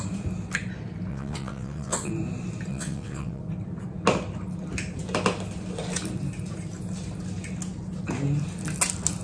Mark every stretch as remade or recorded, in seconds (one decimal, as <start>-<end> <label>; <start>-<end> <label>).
0.0-1.1 recorded; 1.1-2.1 remade; 2.1-2.7 recorded; 2.7-3.4 remade; 3.4-9.2 recorded